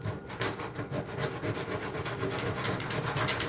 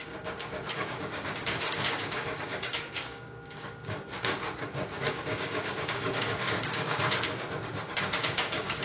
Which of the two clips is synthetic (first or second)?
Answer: second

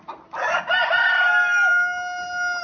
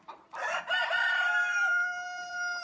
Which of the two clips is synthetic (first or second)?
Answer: second